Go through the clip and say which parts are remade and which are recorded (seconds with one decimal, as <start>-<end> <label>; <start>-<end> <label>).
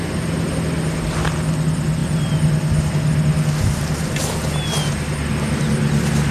0.0-6.3 recorded